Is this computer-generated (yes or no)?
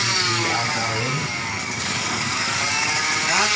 yes